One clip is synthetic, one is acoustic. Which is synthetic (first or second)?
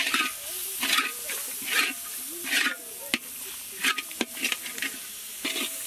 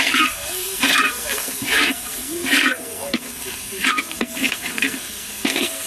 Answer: second